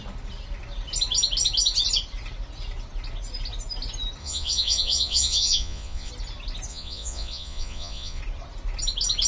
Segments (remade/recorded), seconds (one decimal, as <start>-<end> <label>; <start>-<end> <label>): 0.0-4.2 recorded; 4.2-6.1 remade; 6.1-6.7 recorded; 6.7-8.2 remade; 8.2-9.3 recorded